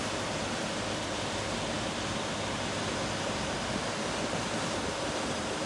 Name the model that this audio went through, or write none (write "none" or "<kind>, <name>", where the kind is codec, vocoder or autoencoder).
none